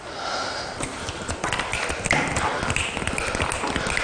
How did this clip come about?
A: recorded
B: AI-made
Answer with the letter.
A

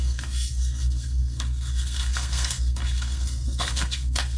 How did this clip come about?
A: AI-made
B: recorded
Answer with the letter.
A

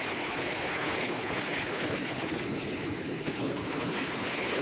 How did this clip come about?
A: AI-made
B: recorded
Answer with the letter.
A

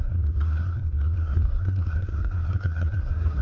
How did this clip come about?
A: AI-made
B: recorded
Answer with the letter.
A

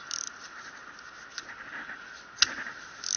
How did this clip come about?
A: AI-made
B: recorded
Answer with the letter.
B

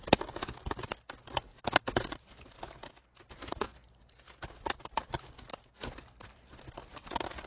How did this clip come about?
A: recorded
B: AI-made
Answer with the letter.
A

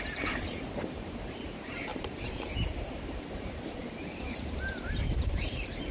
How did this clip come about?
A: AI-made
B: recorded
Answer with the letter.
A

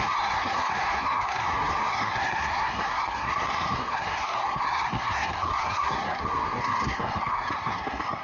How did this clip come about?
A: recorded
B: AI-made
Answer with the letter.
B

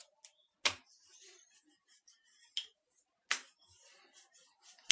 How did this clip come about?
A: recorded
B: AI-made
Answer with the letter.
A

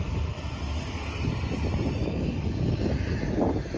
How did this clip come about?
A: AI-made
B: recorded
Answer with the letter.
B